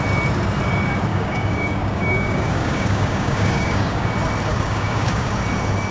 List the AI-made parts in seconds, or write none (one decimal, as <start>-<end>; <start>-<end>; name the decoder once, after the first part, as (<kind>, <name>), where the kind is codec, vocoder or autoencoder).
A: 1.1-4.1 (codec, DAC); 4.5-5.3